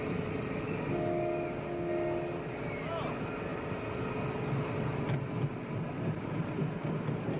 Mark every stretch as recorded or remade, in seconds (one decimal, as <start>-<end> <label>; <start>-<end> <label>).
0.0-7.4 recorded